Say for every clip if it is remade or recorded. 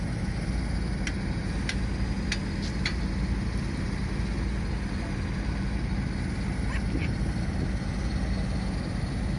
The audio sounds recorded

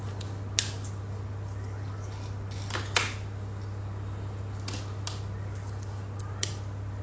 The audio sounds recorded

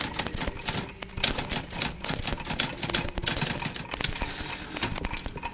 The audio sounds recorded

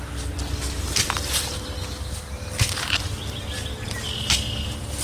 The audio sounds recorded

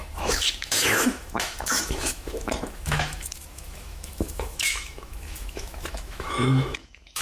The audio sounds remade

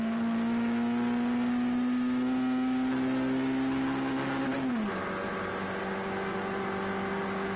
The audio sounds recorded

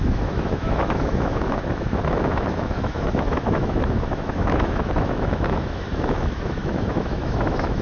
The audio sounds remade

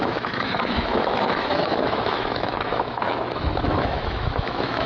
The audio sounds remade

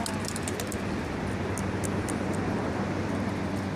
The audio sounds recorded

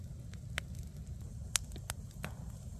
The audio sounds recorded